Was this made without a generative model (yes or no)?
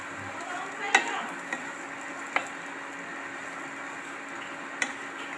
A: yes